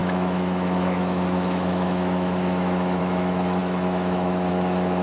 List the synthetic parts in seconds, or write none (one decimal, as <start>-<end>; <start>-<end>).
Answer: 0.0-5.0